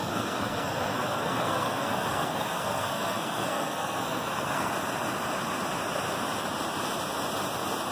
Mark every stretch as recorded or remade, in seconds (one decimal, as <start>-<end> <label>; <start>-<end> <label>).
0.0-4.7 remade; 4.7-7.9 recorded